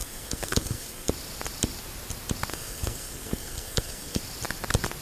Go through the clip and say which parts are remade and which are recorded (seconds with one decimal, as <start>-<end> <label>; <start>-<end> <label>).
0.0-1.1 remade; 1.1-2.5 recorded; 2.5-4.2 remade; 4.2-5.0 recorded